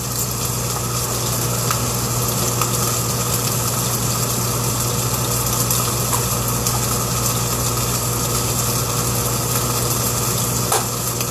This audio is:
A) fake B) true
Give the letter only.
B